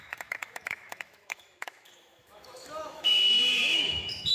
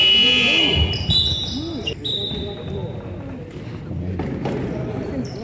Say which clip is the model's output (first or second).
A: first